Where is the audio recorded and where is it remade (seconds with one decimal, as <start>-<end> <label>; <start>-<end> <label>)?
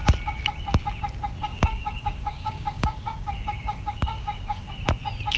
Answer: 0.0-1.5 recorded; 1.5-4.7 remade; 4.7-5.4 recorded